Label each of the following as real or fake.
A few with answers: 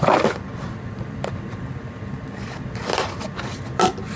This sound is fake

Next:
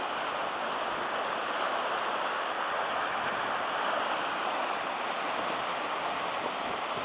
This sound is real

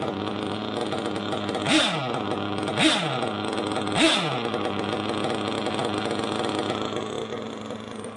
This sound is real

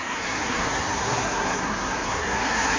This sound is fake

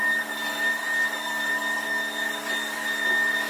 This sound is real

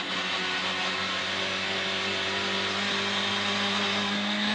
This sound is real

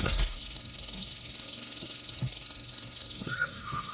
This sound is fake